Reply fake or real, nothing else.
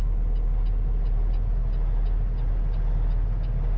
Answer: real